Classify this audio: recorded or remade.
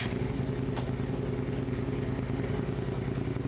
recorded